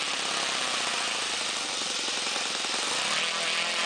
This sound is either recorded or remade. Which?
recorded